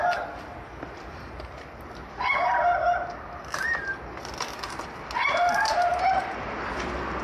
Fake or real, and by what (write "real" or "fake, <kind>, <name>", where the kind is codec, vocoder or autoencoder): real